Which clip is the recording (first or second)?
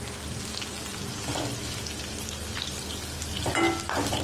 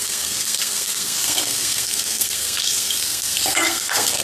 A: first